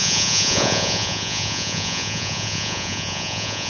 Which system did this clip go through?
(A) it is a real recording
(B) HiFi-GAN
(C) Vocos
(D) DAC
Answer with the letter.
C